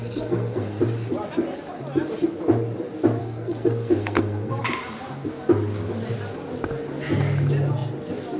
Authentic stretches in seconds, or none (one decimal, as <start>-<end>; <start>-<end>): 0.8-3.2; 4.6-8.4